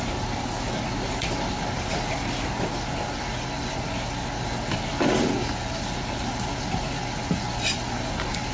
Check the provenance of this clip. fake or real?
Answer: real